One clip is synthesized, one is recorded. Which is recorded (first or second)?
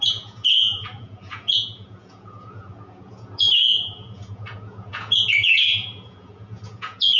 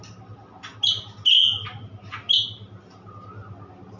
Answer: second